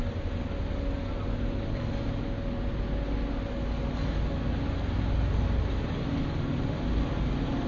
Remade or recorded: recorded